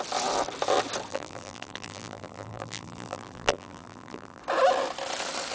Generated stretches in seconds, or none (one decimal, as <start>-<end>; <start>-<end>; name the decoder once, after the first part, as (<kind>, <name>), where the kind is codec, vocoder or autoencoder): 1.1-4.4 (vocoder, BigVGAN v2)